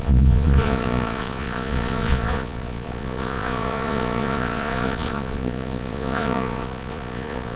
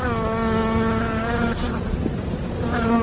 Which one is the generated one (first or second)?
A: first